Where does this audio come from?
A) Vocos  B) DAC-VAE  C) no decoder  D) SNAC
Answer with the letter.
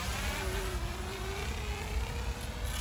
C